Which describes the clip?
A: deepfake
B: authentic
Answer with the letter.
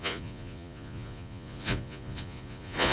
A